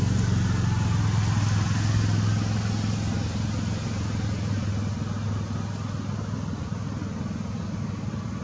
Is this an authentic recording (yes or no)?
yes